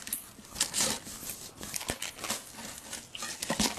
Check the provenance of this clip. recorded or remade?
recorded